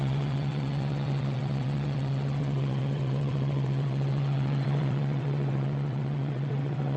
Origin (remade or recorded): remade